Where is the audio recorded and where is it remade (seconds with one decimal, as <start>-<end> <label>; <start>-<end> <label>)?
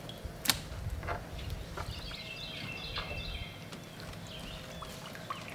0.0-5.5 recorded